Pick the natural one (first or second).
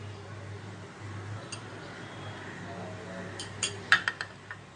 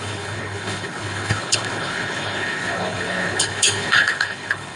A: first